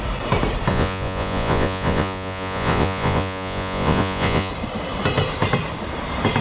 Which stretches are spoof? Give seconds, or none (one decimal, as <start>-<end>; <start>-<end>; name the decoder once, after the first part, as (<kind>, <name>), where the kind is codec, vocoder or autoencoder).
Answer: 0.7-4.5 (vocoder, Vocos)